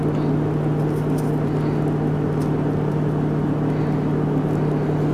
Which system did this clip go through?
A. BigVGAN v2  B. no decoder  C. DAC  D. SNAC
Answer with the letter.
B